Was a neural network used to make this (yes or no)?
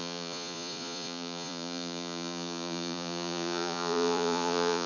yes